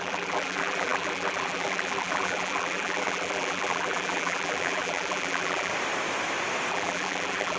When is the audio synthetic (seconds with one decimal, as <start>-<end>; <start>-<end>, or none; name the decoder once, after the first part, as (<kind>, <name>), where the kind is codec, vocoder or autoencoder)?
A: 0.0-5.7 (vocoder, BigVGAN v2); 6.7-7.6